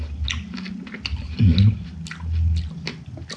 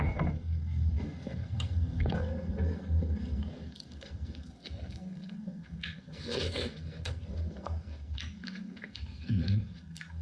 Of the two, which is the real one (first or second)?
first